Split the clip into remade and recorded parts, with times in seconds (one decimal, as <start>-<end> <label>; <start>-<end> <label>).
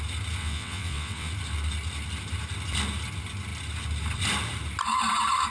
0.0-0.4 recorded; 0.4-1.3 remade; 1.3-5.5 recorded